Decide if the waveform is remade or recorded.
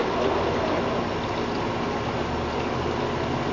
recorded